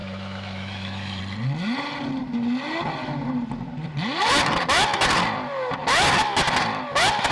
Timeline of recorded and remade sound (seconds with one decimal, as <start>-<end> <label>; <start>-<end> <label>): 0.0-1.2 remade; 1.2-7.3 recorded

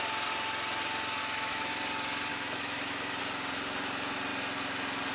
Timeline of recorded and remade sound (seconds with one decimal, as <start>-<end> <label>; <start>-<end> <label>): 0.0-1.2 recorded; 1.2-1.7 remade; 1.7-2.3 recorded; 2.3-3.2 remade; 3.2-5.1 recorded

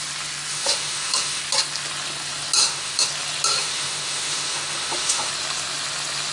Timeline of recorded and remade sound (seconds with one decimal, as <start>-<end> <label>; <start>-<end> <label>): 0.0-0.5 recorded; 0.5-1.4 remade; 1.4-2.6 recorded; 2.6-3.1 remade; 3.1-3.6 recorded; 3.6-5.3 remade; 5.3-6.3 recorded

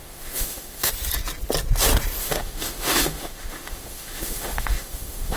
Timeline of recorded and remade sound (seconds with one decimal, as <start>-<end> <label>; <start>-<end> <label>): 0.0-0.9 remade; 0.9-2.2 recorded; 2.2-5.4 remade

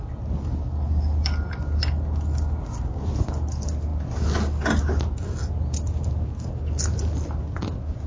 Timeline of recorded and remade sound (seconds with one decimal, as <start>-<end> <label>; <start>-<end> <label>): 0.0-8.1 recorded